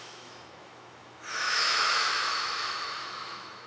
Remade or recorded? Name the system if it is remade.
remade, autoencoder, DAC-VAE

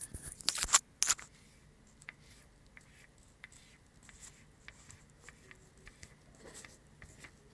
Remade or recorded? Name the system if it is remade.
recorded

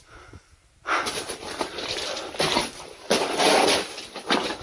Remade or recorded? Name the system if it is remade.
recorded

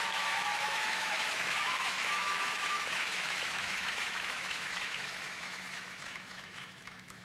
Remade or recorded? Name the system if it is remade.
remade, autoencoder, DAC-VAE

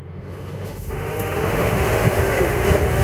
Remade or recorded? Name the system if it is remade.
remade, autoencoder, DAC-VAE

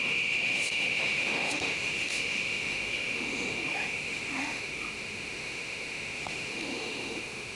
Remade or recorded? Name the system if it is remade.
remade, autoencoder, DAC-VAE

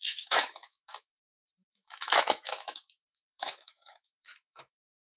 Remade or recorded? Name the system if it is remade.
remade, autoencoder, DAC-VAE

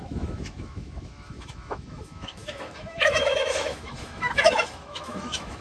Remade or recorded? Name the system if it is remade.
remade, autoencoder, DAC-VAE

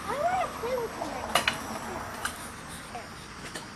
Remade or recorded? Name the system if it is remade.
recorded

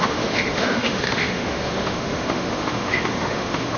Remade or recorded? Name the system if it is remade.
remade, autoencoder, DAC-VAE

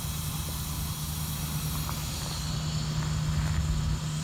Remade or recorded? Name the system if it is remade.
recorded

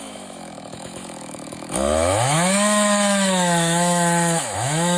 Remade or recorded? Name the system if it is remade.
remade, autoencoder, DAC-VAE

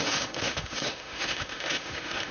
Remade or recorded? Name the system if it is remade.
remade, autoencoder, DAC-VAE